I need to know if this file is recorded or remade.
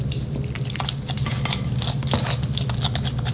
recorded